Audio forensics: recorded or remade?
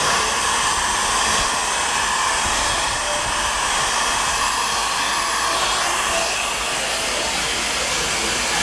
recorded